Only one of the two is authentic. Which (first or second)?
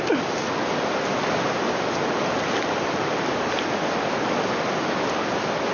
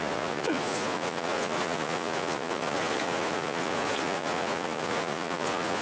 first